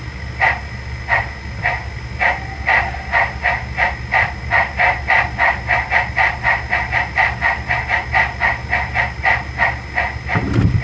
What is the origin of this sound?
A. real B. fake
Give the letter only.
A